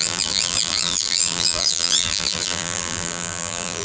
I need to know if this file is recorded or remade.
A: remade